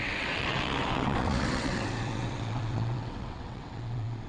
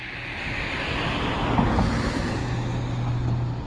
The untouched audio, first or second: second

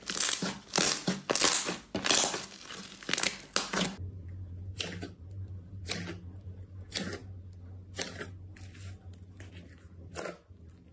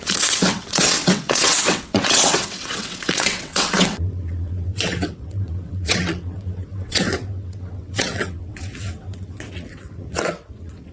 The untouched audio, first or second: first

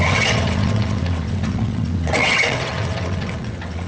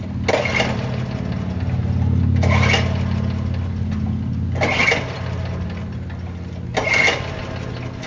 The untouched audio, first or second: second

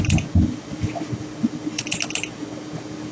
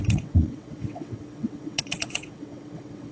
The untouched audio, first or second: first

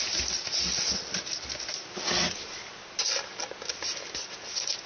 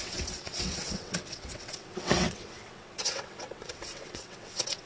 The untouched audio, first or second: first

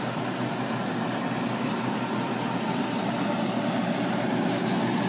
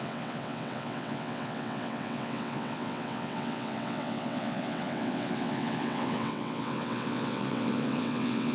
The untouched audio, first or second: first